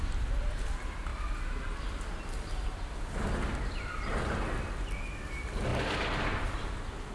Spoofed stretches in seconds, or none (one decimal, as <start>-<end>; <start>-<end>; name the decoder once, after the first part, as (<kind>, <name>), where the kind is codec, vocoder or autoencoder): none